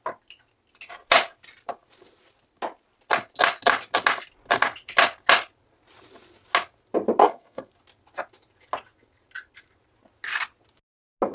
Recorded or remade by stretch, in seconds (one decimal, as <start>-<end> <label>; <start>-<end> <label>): 0.0-7.2 recorded; 7.2-7.7 remade; 7.7-11.3 recorded